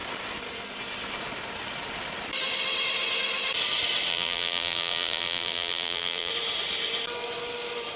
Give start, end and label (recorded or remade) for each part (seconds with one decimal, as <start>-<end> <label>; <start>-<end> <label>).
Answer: 0.0-4.1 recorded; 4.1-6.3 remade; 6.3-8.0 recorded